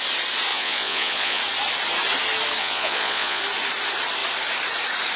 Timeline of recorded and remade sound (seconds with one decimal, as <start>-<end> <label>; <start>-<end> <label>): 0.0-0.5 recorded; 0.5-1.4 remade; 1.4-2.6 recorded; 2.6-3.4 remade; 3.4-5.2 recorded

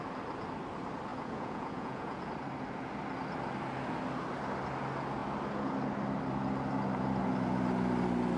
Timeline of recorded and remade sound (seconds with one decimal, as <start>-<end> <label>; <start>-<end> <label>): 0.0-1.1 recorded; 1.1-2.3 remade; 2.3-8.4 recorded

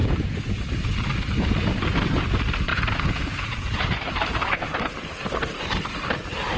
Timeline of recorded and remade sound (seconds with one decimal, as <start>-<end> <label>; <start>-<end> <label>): 0.0-0.5 remade; 0.5-2.7 recorded; 2.7-3.8 remade; 3.8-6.6 recorded

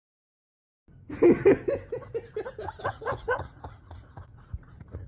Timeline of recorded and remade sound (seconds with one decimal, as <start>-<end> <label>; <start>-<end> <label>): 0.0-2.8 recorded; 2.8-5.1 remade

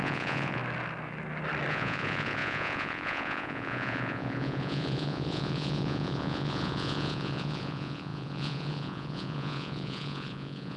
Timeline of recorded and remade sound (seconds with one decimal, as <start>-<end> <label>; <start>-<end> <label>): 0.0-0.6 remade; 0.6-1.7 recorded; 1.7-10.8 remade

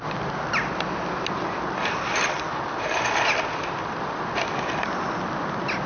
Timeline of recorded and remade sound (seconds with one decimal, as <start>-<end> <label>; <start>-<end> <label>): 0.0-5.9 recorded

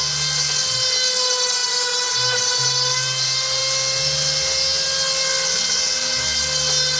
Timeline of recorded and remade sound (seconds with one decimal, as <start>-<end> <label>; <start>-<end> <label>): 0.0-7.0 recorded

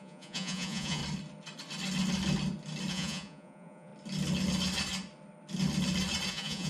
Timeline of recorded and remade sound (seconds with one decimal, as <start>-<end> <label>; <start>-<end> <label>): 0.0-1.0 remade; 1.0-2.9 recorded; 2.9-3.9 remade; 3.9-6.3 recorded; 6.3-6.7 remade